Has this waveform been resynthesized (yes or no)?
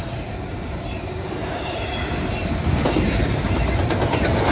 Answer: no